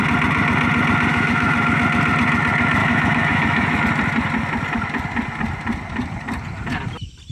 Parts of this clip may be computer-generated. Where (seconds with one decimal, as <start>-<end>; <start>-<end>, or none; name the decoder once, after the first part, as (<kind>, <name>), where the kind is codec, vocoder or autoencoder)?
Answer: 1.1-1.8 (autoencoder, DAC-VAE); 2.8-3.8